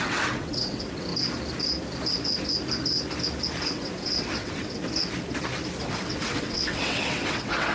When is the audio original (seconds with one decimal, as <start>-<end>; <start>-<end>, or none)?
1.1-3.6; 4.8-5.9